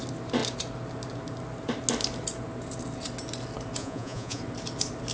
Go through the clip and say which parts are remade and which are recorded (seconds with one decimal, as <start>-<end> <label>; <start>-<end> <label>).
0.0-3.8 recorded; 3.8-4.4 remade; 4.4-5.1 recorded